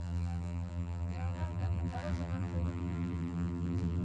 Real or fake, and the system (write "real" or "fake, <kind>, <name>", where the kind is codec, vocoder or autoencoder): fake, vocoder, BigVGAN v2